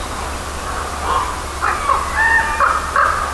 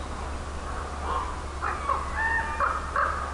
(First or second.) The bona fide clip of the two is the second